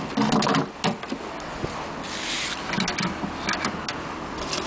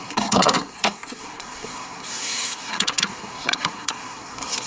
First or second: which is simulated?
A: second